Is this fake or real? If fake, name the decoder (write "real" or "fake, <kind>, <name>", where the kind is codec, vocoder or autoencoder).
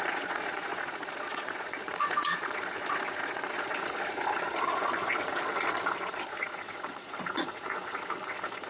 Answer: fake, vocoder, Vocos